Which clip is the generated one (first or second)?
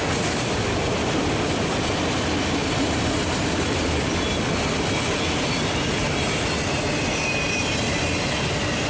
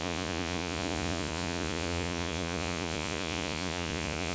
second